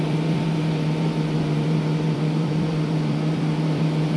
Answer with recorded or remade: remade